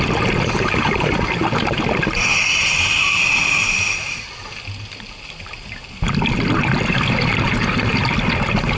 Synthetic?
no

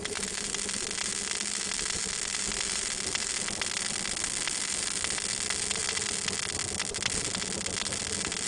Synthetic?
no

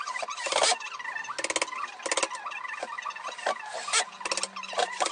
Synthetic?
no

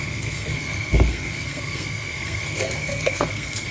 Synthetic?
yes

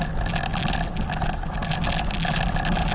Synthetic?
no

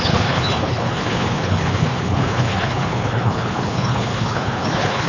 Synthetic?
yes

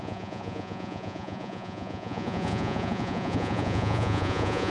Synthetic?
yes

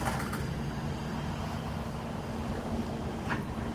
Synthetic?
no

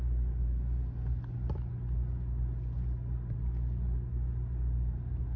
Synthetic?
no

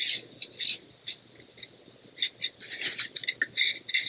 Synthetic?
no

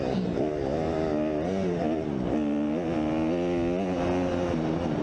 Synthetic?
no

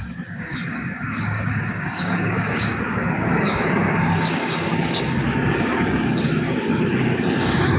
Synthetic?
yes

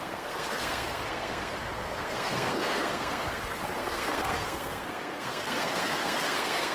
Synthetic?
yes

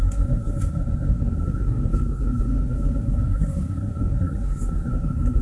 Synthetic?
yes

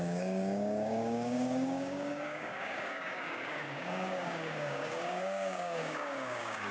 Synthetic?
yes